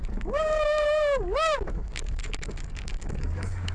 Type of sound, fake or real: fake